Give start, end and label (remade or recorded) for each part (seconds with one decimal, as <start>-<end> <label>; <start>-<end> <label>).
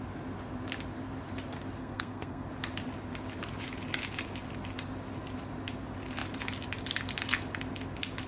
0.0-1.8 recorded; 1.8-2.5 remade; 2.5-8.3 recorded